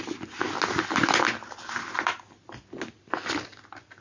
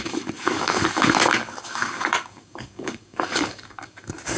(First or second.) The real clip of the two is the first